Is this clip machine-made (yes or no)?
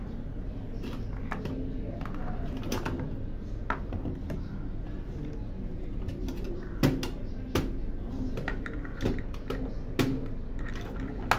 no